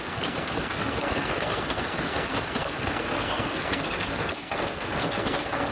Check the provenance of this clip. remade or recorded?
remade